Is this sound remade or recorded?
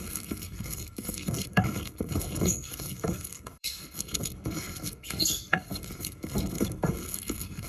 remade